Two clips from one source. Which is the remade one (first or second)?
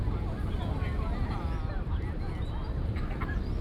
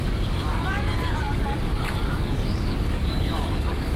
second